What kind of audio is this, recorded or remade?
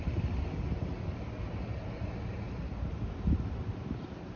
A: recorded